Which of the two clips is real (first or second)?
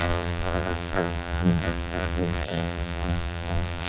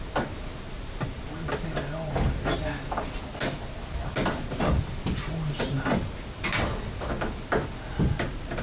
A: second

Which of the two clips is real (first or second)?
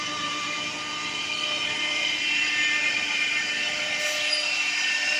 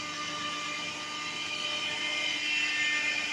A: second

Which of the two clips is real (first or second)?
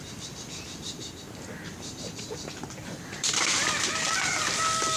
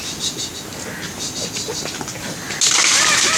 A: second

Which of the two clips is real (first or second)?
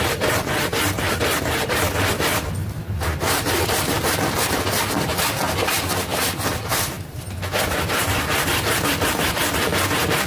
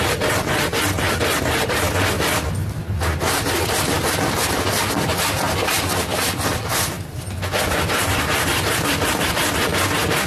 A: second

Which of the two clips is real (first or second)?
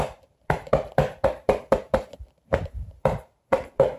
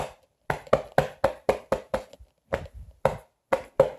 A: second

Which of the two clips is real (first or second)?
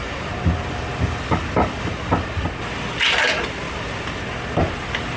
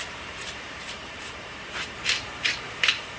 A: first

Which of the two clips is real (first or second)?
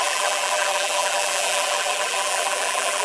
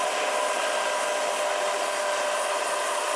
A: second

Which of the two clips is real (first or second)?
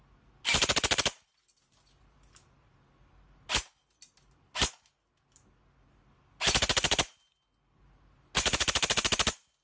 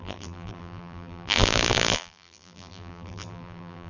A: first